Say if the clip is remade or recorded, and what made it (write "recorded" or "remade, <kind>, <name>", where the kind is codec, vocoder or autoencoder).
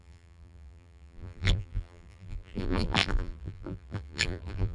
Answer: remade, vocoder, BigVGAN v2